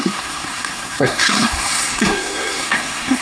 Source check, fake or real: fake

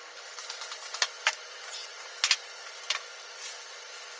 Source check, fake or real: real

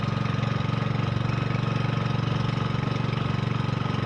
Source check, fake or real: real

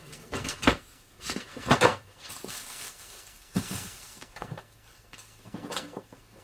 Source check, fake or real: fake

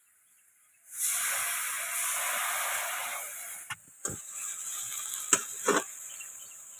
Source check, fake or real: real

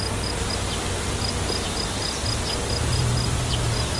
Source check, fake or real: real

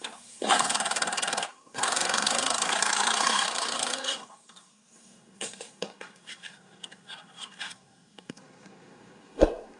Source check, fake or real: fake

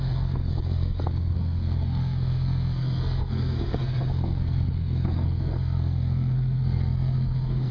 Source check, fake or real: fake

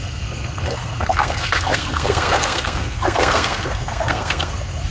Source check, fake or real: fake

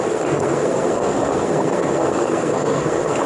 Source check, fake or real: fake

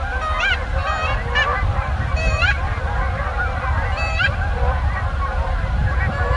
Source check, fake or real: real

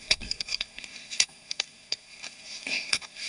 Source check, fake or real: fake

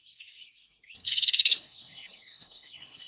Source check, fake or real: fake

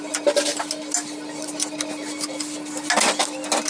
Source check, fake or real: real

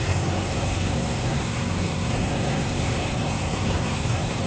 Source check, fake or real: fake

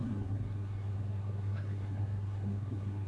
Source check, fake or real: fake